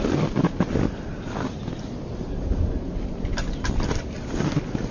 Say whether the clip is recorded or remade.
recorded